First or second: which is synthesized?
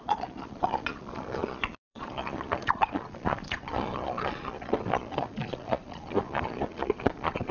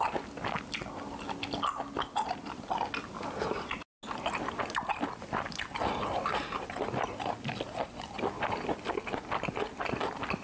first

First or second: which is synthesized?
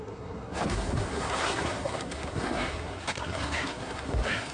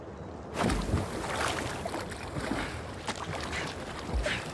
first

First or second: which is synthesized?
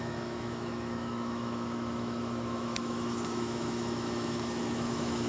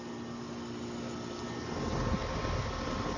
first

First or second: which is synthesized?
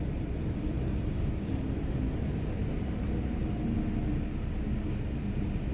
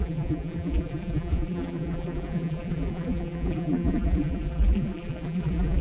second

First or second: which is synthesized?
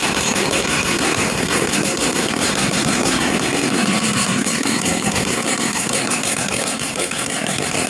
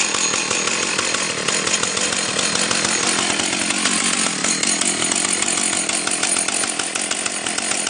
first